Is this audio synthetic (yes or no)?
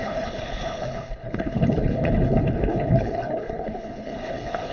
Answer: yes